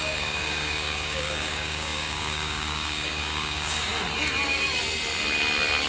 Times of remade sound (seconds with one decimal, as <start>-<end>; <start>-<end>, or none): 0.0-3.9